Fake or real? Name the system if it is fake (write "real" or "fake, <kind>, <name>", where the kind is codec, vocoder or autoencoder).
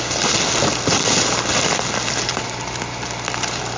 real